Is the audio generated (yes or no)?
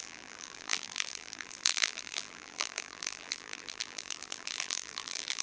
yes